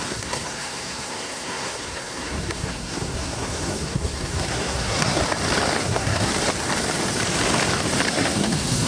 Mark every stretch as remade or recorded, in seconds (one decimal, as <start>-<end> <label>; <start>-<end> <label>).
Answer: 0.0-5.2 remade; 5.2-5.8 recorded; 5.8-6.3 remade; 6.3-8.1 recorded; 8.1-8.9 remade